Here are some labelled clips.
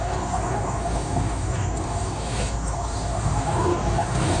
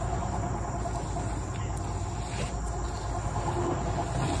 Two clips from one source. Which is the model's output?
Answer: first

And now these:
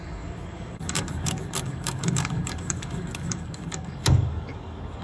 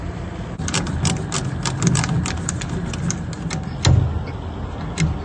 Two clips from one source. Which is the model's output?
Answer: first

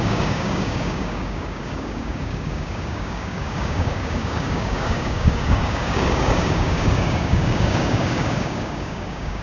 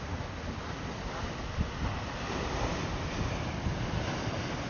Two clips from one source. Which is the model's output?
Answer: first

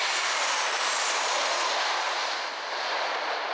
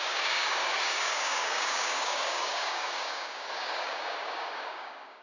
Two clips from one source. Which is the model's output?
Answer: second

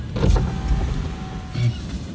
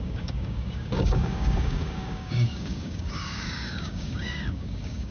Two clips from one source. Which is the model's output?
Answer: second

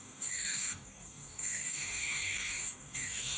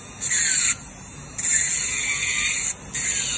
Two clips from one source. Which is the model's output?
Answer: first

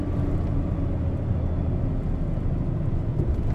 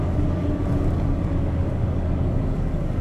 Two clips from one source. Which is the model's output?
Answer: second